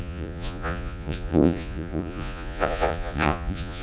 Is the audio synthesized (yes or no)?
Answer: yes